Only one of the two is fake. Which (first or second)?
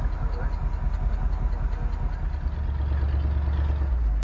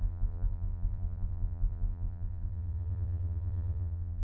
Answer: second